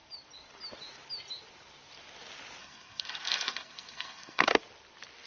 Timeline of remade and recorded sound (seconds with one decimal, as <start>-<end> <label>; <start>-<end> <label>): 0.0-2.6 recorded; 2.6-4.6 remade; 4.6-5.3 recorded